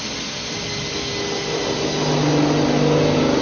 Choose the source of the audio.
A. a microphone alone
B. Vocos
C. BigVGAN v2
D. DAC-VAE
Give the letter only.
A